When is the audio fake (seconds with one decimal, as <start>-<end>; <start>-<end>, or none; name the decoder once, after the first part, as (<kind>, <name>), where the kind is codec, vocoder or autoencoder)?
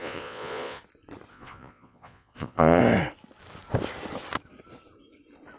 0.0-0.8 (vocoder, Vocos); 1.3-2.8